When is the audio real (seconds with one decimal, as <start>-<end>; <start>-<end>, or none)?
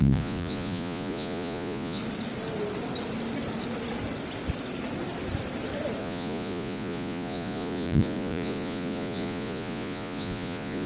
2.0-6.0